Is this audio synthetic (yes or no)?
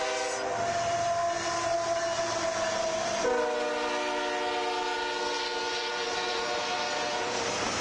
no